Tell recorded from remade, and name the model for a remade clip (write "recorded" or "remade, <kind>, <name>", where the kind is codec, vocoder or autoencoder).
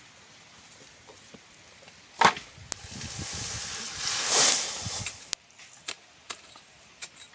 recorded